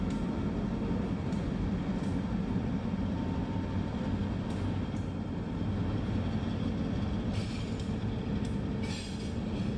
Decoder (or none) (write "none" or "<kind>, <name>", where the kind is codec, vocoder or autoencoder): none